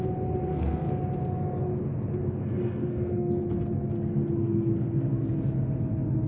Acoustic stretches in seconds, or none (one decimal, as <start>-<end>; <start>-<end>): 0.0-0.5; 1.0-2.2; 3.4-4.4; 5.3-6.3